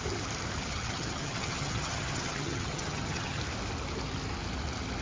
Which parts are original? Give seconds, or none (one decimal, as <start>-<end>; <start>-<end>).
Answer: 0.0-0.7; 3.4-5.0